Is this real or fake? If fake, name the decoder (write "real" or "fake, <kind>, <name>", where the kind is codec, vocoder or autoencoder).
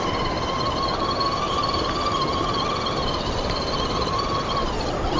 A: fake, vocoder, BigVGAN v2